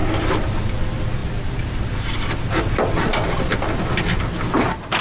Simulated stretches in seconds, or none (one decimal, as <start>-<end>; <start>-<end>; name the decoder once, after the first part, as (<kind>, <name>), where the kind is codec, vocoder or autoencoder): none